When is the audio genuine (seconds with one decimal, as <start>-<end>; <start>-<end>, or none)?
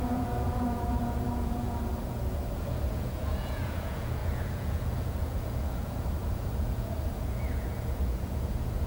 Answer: none